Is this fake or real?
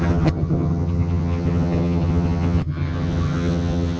fake